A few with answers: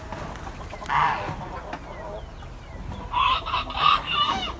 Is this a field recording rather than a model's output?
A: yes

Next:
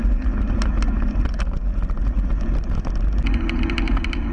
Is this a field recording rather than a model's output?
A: yes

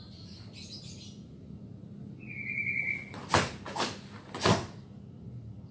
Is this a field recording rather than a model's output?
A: yes